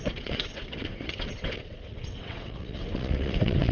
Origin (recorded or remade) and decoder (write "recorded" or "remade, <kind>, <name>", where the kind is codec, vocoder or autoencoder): remade, vocoder, WaveNeXt